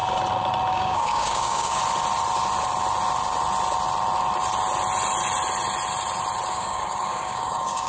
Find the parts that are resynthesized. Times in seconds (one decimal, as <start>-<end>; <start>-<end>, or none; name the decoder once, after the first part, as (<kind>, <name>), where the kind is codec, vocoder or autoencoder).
0.7-1.8 (codec, DAC); 6.5-7.9